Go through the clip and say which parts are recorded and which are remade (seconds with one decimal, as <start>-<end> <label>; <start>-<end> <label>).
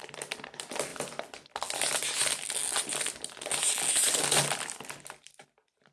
0.0-5.9 recorded